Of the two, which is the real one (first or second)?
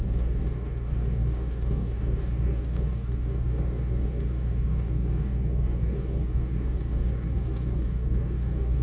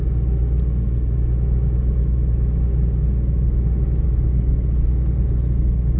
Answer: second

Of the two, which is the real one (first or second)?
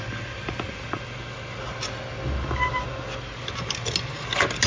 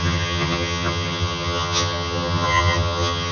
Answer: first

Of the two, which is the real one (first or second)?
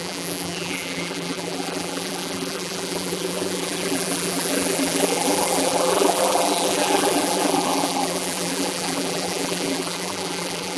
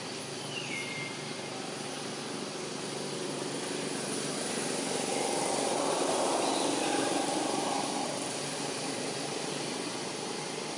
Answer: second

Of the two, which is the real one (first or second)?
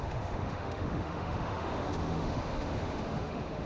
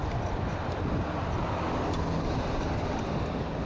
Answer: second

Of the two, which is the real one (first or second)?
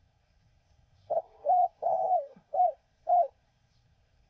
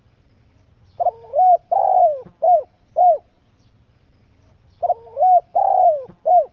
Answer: second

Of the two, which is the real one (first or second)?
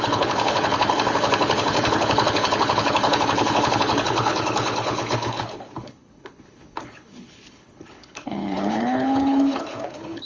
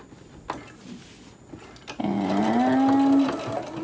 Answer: second